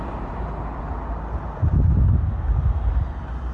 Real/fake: real